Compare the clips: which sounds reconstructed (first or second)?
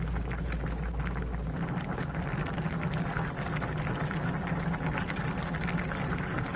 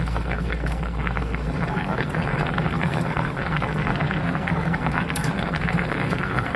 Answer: second